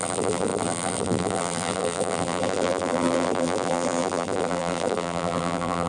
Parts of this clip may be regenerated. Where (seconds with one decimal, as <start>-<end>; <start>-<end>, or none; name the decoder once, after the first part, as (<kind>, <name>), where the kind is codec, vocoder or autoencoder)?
0.0-5.9 (vocoder, BigVGAN v2)